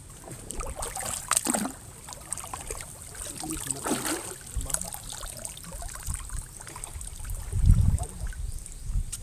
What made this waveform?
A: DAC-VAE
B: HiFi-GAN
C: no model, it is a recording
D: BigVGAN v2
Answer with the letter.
C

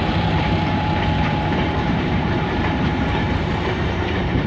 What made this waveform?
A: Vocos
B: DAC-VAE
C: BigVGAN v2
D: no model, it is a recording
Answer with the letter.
C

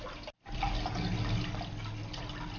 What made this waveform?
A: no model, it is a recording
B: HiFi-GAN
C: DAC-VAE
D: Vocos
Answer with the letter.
A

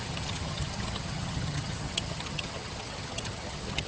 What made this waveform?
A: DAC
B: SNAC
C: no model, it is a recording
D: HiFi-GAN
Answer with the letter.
D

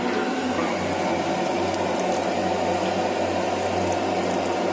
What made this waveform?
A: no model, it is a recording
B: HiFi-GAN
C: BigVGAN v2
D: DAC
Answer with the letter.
A